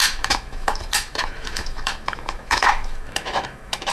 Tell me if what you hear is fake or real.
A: fake